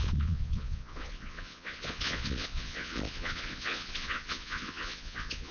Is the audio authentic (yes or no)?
no